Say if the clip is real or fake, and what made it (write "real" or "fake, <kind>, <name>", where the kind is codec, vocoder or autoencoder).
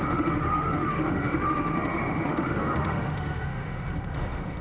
fake, autoencoder, DAC-VAE